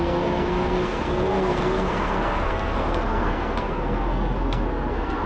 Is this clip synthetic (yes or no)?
yes